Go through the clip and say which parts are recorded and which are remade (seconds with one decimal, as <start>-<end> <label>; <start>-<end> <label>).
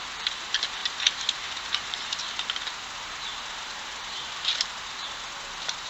0.0-0.8 recorded; 0.8-2.2 remade; 2.2-3.3 recorded; 3.3-4.3 remade; 4.3-5.9 recorded